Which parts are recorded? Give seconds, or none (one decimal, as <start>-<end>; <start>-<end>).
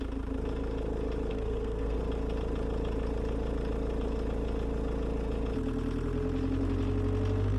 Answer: 0.0-1.3; 2.0-7.6